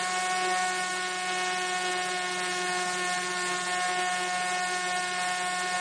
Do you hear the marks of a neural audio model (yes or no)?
no